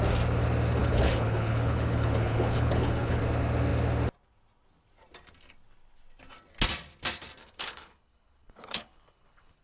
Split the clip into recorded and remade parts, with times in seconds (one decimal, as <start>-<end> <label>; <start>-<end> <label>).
0.0-0.8 recorded; 0.8-3.2 remade; 3.2-7.4 recorded; 7.4-9.6 remade